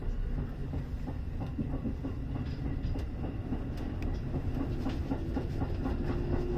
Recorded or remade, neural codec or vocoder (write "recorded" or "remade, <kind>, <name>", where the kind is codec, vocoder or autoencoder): recorded